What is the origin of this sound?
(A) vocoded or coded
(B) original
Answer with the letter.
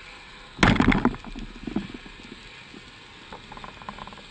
B